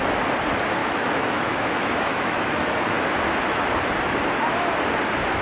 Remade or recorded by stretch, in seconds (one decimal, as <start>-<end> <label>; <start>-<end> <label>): 0.0-0.8 recorded; 0.8-3.2 remade; 3.2-5.4 recorded